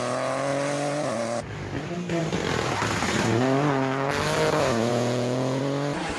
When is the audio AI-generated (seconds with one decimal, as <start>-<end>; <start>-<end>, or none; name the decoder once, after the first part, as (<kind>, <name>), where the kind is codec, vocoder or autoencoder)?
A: 4.9-5.6 (vocoder, Vocos)